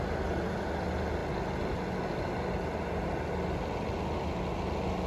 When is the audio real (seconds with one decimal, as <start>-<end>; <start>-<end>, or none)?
0.0-5.1